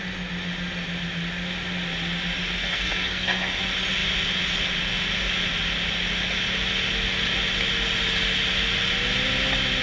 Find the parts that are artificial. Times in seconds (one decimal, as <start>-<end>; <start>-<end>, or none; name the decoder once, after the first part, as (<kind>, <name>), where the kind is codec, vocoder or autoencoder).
2.6-3.6 (codec, SNAC)